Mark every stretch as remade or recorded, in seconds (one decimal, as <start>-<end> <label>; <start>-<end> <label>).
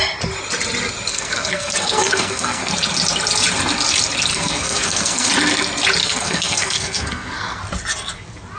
0.0-1.1 recorded; 1.1-2.7 remade; 2.7-4.3 recorded; 4.3-5.3 remade; 5.3-6.0 recorded; 6.0-7.6 remade; 7.6-8.6 recorded